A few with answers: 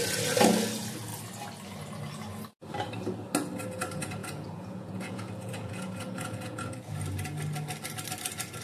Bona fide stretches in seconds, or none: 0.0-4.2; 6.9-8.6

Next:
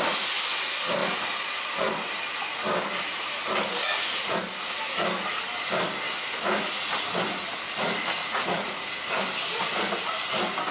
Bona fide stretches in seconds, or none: 0.0-8.2; 8.9-10.7

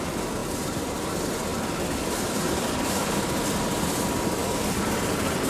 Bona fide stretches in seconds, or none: 0.0-1.5; 4.8-5.5

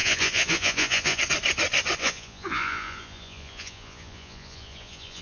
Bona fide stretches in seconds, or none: 1.2-2.0

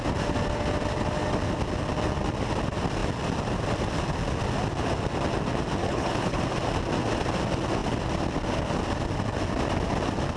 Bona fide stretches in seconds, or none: 0.0-5.8; 6.4-10.4

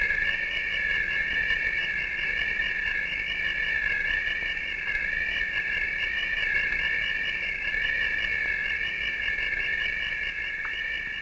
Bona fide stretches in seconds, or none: 0.0-11.2

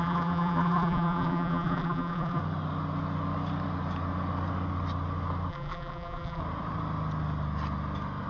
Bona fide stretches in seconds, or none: 2.4-5.5; 6.4-8.3

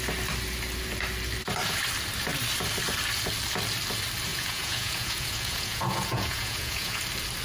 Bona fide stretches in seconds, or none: 0.0-4.3; 7.0-7.4